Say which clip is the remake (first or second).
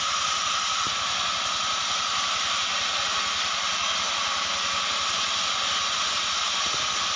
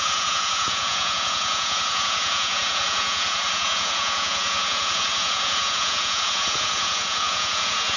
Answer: second